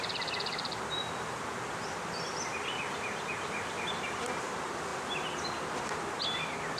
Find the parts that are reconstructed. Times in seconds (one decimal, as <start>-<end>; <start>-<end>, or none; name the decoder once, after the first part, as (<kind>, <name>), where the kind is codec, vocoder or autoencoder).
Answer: none